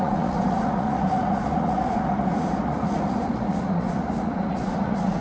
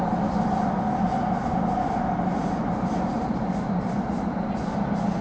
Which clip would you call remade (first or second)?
first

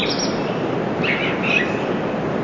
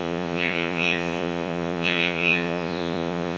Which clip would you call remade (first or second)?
second